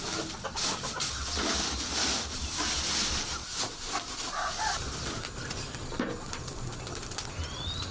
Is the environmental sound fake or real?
real